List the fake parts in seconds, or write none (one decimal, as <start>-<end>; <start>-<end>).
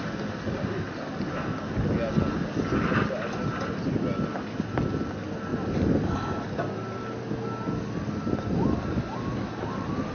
none